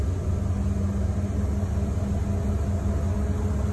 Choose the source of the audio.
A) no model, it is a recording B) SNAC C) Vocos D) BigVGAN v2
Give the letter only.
A